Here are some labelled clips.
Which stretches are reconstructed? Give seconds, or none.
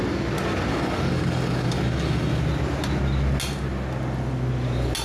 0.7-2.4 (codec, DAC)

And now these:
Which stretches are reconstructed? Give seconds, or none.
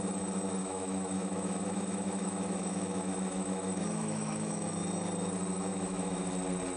0.6-4.7 (autoencoder, DAC-VAE); 5.7-6.3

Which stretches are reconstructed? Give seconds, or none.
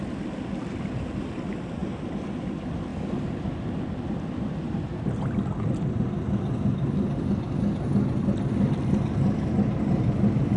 none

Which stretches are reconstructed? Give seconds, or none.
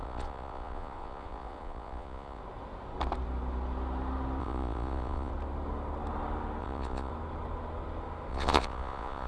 0.0-2.4 (vocoder, Vocos); 4.4-5.3; 6.6-7.1; 8.3-9.3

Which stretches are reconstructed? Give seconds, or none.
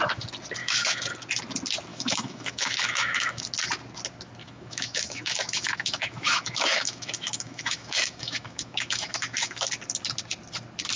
0.6-1.1 (autoencoder, DAC-VAE); 1.9-3.4; 4.4-9.7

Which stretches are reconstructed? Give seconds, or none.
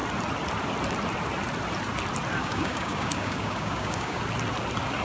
2.4-4.2 (codec, DAC)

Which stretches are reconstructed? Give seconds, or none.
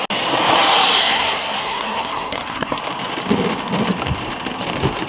1.0-2.8 (codec, SNAC)